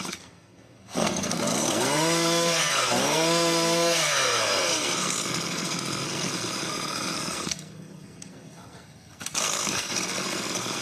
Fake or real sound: fake